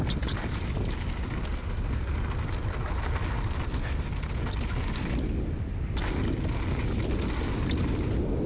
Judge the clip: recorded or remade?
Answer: recorded